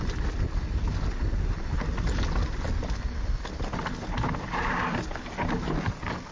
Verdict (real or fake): real